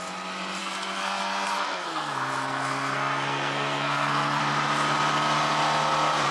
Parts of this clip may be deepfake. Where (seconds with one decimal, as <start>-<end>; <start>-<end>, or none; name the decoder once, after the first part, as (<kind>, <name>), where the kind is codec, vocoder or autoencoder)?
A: 0.6-4.4 (codec, SNAC)